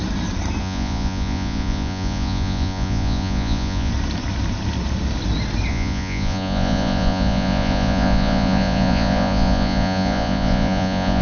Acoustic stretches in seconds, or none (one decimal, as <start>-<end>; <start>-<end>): 0.0-0.6; 3.9-5.7

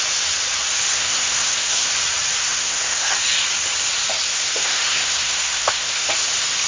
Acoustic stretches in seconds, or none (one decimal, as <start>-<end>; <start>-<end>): 0.0-0.9; 1.9-2.4; 3.1-4.3; 6.1-6.7

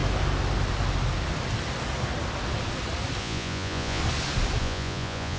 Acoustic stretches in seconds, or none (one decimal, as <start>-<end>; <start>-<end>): 0.0-3.2; 4.0-4.6

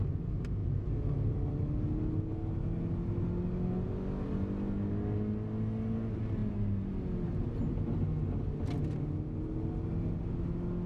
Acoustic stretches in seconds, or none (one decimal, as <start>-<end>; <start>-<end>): 0.0-10.9

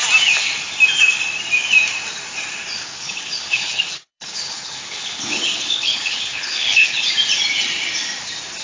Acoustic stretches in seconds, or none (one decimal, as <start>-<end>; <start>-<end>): 0.0-2.8; 7.1-8.6

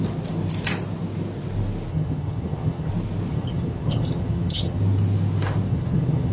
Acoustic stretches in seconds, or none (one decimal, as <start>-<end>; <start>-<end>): 0.0-1.9; 2.9-3.3; 4.8-5.7